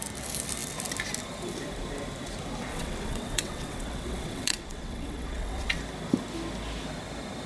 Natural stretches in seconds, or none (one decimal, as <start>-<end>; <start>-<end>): 0.0-2.7; 5.8-7.5